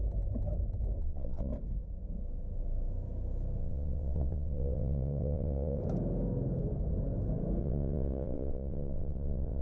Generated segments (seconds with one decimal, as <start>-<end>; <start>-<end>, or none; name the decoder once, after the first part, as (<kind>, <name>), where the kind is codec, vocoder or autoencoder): 1.0-1.5 (vocoder, WaveNeXt); 3.6-5.8; 7.6-9.6